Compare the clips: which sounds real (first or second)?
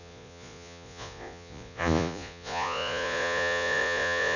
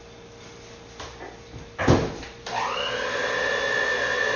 second